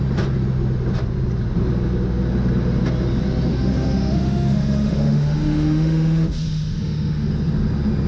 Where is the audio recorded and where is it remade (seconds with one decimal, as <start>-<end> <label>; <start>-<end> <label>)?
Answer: 0.0-3.5 recorded; 3.5-7.3 remade; 7.3-8.1 recorded